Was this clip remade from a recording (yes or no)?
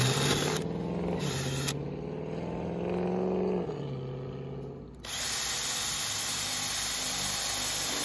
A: no